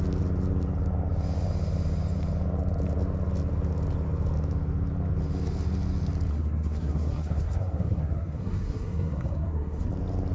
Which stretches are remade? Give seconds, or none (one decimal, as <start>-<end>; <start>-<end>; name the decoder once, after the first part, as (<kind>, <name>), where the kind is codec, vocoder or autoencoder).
6.3-9.9 (codec, SNAC)